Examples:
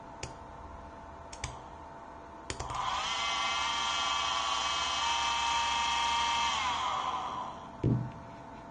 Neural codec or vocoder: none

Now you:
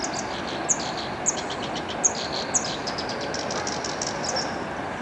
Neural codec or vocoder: none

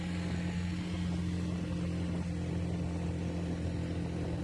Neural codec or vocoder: none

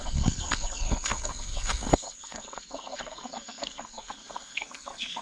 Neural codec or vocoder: codec, SNAC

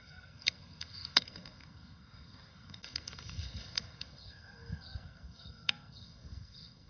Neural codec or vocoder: codec, SNAC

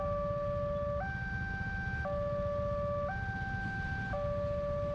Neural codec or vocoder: none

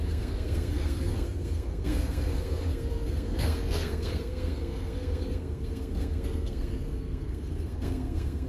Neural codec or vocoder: codec, SNAC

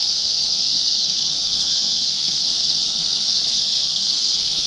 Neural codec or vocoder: codec, SNAC